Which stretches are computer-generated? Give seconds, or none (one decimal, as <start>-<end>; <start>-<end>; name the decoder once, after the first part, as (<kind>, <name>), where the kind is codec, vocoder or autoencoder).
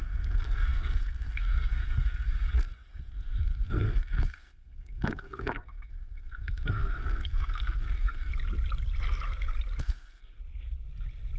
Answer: 0.0-8.3 (codec, SNAC); 9.8-10.4